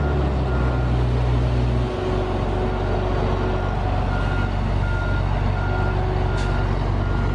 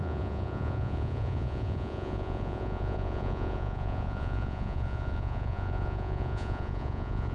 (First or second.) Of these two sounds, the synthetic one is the second